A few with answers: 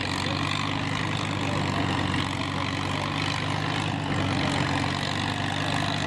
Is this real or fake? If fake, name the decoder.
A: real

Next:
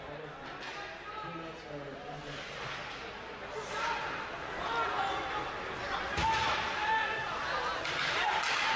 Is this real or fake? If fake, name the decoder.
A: real